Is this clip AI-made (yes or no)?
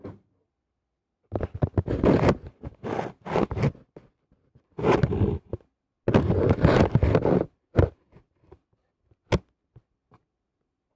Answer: no